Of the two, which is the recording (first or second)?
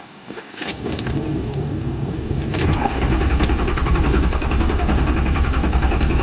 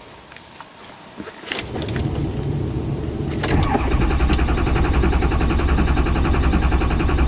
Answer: second